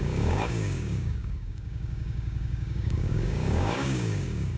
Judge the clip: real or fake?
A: fake